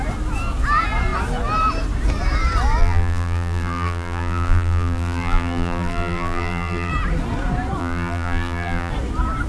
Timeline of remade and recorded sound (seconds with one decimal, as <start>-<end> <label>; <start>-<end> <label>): 0.0-2.8 recorded; 2.8-6.9 remade; 6.9-7.8 recorded; 7.8-8.9 remade; 8.9-9.5 recorded